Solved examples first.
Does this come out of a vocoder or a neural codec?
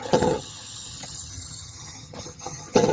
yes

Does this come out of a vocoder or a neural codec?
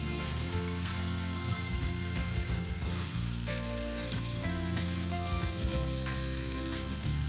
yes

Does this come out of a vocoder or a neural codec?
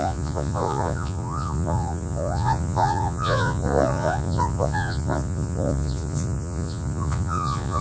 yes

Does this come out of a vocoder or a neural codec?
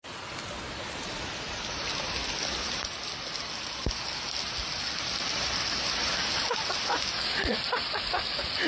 no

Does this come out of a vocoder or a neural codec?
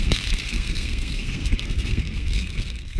yes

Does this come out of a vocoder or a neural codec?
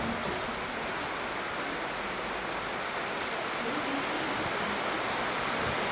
no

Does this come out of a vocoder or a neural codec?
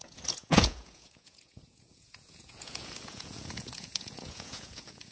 yes